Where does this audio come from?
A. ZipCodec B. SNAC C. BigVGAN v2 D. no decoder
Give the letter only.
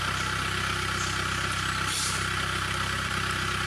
D